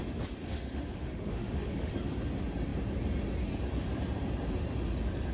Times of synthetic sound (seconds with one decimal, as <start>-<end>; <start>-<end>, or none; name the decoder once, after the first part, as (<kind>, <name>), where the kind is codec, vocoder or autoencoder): 0.4-1.9 (autoencoder, DAC-VAE)